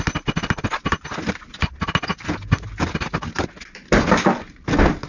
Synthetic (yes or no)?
no